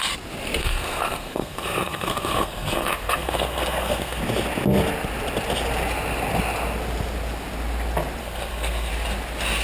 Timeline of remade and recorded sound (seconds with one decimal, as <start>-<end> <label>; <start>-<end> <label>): 0.0-0.6 recorded; 0.6-4.2 remade; 4.2-8.2 recorded; 8.2-8.9 remade; 8.9-9.6 recorded